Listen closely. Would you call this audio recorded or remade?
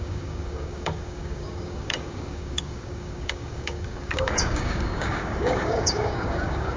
remade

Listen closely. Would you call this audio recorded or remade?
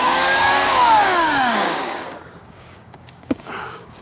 remade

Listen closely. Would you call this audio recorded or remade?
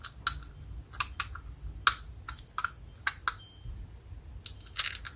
recorded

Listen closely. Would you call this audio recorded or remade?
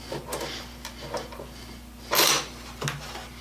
recorded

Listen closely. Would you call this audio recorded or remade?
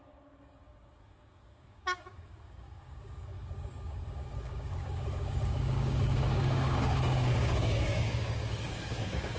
remade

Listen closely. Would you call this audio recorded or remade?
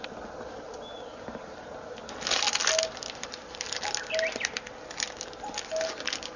recorded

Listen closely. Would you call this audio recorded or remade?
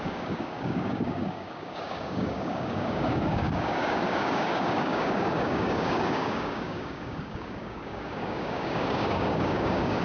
remade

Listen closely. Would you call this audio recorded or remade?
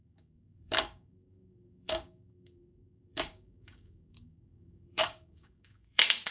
remade